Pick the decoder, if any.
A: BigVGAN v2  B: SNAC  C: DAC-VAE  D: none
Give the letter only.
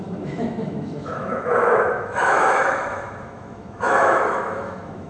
C